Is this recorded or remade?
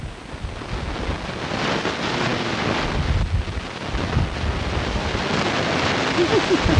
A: recorded